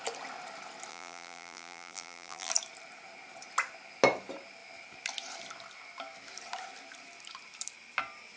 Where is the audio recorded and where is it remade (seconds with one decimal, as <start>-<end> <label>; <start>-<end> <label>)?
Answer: 0.0-0.9 recorded; 0.9-2.5 remade; 2.5-8.4 recorded

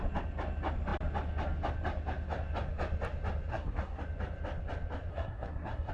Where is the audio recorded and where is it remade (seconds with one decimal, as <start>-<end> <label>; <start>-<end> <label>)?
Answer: 0.0-3.5 recorded; 3.5-4.0 remade; 4.0-5.1 recorded; 5.1-5.9 remade

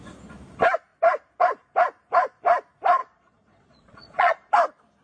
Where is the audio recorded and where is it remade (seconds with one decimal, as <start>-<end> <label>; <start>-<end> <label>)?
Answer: 0.0-3.0 recorded; 3.0-4.5 remade; 4.5-5.0 recorded